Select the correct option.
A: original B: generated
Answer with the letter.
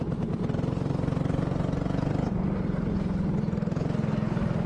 A